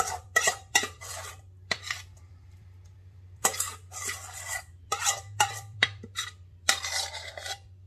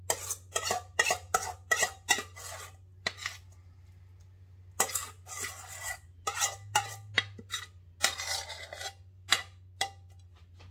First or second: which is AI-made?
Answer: first